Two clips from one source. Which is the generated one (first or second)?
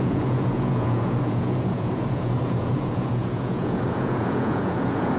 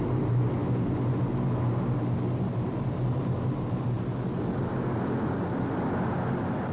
first